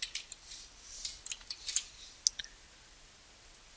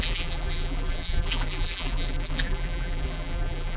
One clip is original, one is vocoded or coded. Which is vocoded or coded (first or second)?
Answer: second